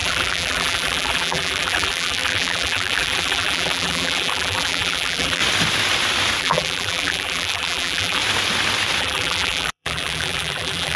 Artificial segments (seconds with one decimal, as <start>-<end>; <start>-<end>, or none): 0.0-5.4; 6.4-8.2; 9.0-11.0